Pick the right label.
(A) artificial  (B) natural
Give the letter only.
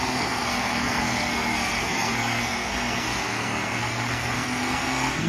A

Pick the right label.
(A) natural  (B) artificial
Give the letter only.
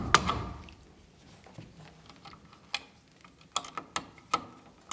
A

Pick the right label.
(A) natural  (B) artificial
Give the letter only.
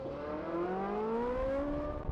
A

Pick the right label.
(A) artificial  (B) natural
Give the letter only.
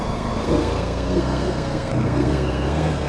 A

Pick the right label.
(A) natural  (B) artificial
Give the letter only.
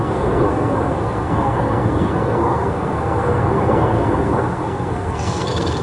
B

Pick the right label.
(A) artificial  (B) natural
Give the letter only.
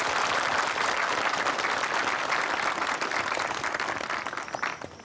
B